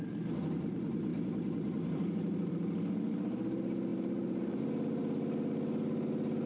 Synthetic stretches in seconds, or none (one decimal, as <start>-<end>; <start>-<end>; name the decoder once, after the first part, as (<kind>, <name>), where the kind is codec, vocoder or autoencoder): 1.1-2.5 (vocoder, BigVGAN v2); 3.9-4.6